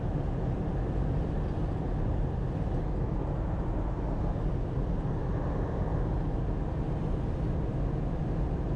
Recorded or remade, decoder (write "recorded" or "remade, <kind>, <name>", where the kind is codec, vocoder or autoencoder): recorded